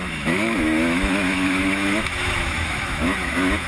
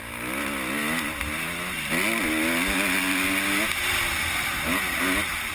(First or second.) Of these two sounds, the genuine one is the second